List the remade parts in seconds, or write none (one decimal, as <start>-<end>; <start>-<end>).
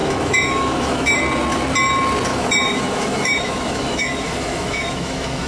0.0-1.2; 2.3-5.5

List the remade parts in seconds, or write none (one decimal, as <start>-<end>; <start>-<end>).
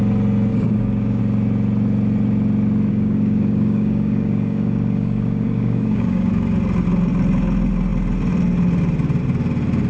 0.5-1.2; 2.9-6.3